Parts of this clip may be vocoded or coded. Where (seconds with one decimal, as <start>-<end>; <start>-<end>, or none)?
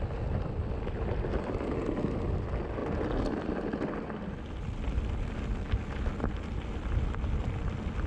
none